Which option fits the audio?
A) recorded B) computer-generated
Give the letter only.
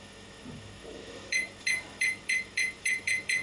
B